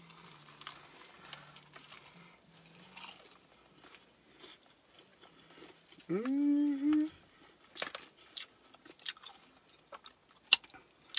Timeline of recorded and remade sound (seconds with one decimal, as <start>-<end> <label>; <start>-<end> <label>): 0.0-11.2 recorded